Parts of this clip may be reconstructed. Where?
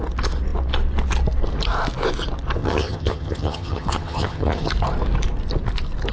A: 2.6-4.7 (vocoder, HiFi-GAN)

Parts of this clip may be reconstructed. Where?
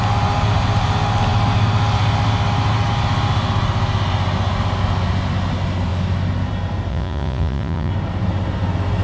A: 6.9-7.9 (vocoder, Vocos)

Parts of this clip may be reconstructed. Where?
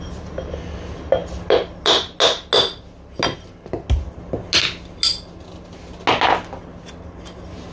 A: none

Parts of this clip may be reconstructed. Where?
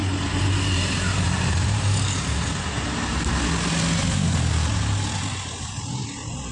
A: 0.0-3.3 (vocoder, BigVGAN v2)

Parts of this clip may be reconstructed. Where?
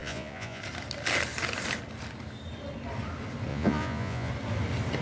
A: 0.0-0.6 (vocoder, Vocos); 3.5-4.3